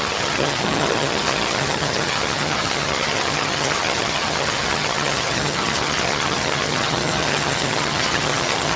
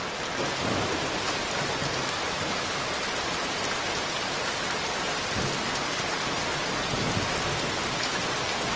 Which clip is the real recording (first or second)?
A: second